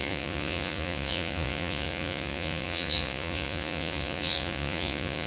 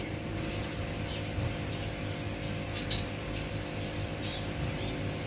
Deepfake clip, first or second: first